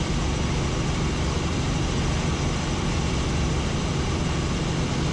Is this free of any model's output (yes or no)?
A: no